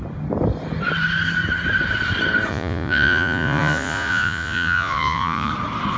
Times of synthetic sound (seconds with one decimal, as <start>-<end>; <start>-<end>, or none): 2.5-5.5